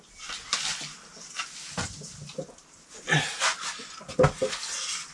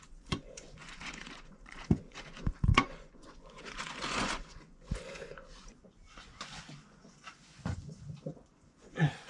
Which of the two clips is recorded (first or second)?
first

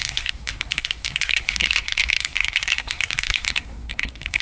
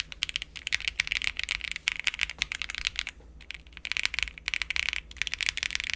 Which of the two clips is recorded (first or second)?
second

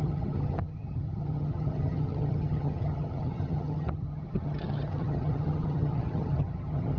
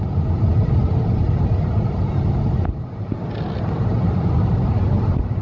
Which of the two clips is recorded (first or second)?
second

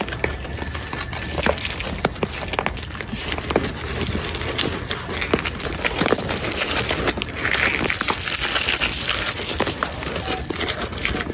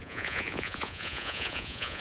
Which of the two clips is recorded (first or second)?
first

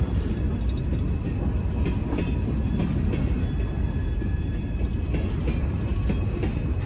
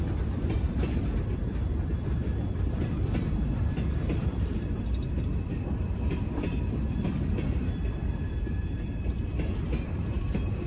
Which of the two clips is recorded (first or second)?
first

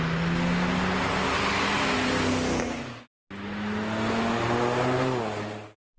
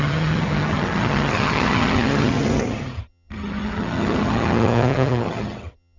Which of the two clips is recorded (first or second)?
first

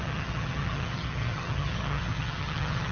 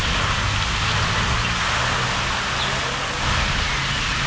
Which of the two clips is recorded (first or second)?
second